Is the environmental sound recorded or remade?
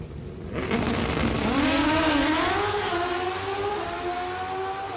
recorded